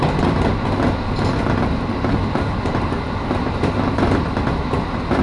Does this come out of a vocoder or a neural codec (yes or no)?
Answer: no